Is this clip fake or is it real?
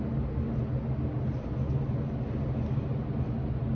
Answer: real